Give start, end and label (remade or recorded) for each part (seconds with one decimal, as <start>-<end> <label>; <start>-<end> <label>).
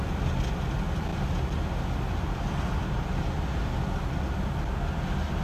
0.0-5.4 recorded